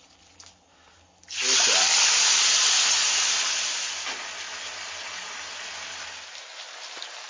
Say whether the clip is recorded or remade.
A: recorded